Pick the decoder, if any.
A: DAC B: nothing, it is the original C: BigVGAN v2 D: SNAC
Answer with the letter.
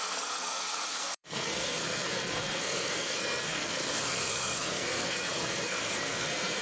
D